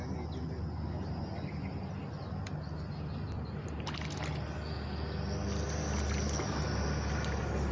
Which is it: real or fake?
real